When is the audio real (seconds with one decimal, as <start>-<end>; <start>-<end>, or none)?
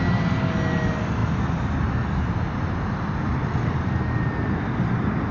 0.0-5.3